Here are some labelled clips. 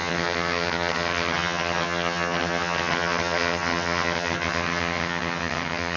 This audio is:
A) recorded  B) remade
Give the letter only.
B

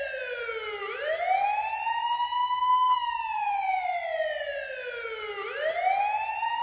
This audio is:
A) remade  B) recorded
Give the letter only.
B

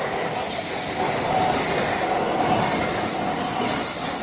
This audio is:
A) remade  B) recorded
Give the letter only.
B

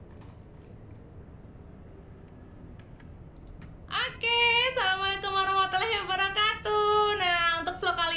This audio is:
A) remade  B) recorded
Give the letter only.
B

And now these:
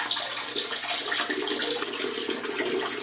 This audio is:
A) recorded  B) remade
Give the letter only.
A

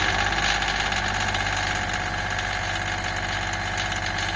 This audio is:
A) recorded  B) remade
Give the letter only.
A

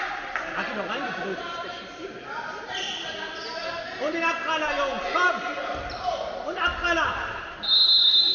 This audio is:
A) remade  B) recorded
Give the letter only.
B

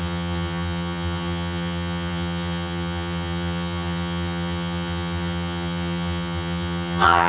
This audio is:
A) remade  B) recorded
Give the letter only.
A